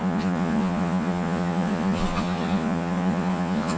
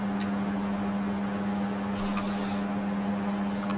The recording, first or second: second